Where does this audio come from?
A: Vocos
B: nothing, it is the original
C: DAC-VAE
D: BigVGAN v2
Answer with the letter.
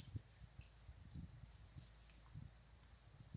B